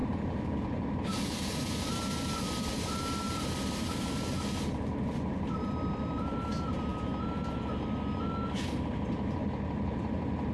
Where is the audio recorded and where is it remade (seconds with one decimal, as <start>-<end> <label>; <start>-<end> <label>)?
0.0-1.2 recorded; 1.2-2.7 remade; 2.7-5.5 recorded; 5.5-6.9 remade; 6.9-8.9 recorded; 8.9-10.5 remade